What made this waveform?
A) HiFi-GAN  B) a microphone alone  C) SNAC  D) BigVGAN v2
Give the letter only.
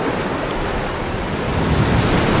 B